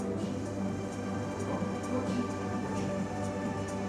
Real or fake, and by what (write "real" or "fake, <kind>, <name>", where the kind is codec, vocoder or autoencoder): real